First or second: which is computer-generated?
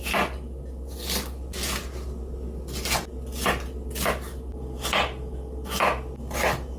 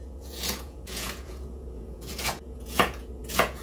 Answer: second